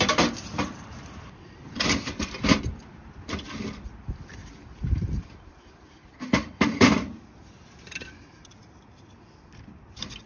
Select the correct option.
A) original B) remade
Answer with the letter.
B